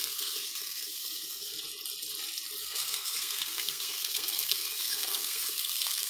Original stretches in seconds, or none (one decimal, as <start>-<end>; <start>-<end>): 1.5-2.6